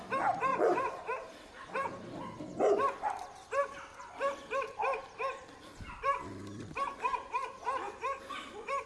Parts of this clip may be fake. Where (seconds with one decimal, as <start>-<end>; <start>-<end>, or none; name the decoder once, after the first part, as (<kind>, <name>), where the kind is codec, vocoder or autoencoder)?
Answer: 0.5-1.0 (vocoder, Vocos)